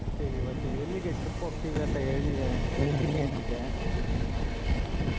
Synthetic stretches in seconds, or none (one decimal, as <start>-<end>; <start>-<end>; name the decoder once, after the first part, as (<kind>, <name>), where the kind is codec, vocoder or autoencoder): 2.8-3.4 (vocoder, HiFi-GAN)